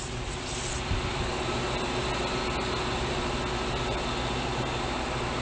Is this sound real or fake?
real